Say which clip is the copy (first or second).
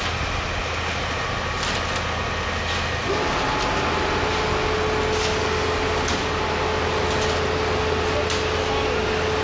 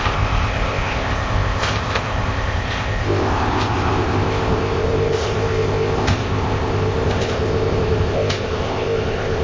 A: second